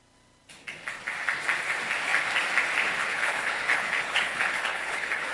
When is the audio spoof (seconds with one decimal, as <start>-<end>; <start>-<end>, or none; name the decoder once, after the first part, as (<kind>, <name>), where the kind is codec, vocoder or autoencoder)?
3.0-5.3 (codec, HILCodec)